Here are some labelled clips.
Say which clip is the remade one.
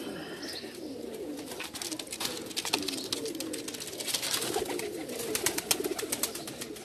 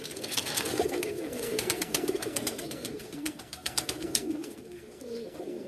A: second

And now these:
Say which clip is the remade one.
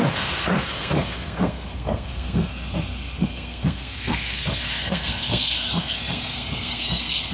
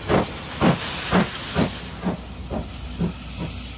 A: first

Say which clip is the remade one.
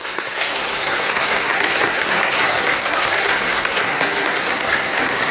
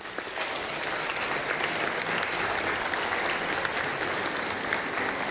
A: first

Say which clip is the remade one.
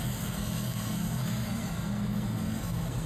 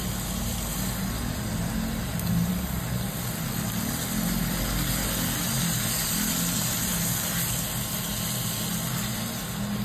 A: first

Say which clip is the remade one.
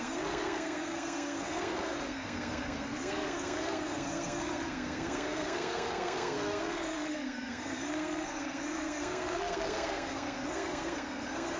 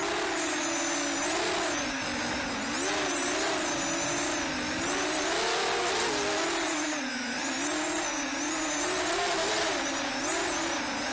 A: first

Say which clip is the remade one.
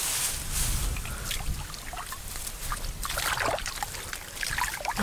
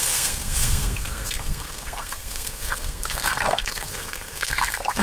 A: second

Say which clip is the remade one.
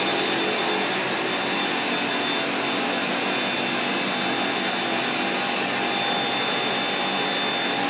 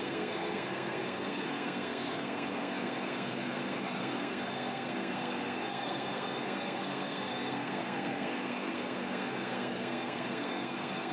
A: second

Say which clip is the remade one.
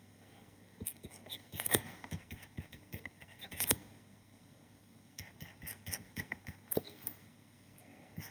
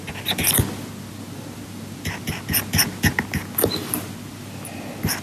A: first